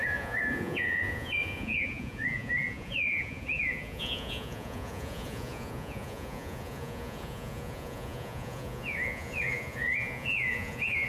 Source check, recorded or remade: remade